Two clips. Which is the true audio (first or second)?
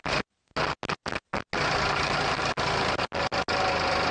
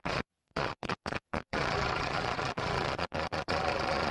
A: first